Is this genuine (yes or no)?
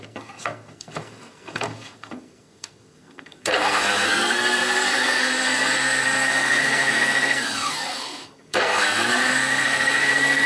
no